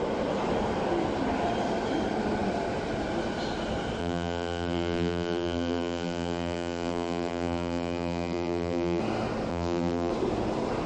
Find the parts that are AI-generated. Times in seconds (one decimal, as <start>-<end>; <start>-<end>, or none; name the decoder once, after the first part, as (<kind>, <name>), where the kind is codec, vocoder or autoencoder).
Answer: 4.0-9.0 (vocoder, BigVGAN v2); 9.5-10.1